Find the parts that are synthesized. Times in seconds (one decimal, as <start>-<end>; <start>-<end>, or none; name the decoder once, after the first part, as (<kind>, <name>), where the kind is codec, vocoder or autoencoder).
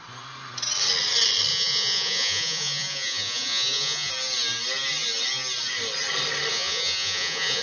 1.5-4.1 (vocoder, Vocos); 6.5-7.6